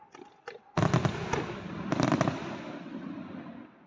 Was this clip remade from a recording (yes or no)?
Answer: no